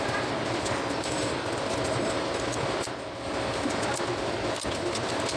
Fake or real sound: real